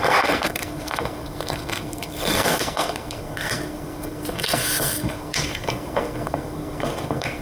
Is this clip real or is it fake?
fake